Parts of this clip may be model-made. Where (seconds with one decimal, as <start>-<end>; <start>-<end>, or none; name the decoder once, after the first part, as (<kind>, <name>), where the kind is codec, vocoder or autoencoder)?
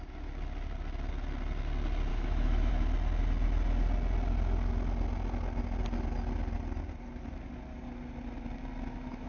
2.1-2.7 (autoencoder, DAC-VAE)